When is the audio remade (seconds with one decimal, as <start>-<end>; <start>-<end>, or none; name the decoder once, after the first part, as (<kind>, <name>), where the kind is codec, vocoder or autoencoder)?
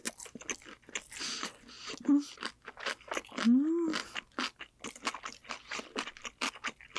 none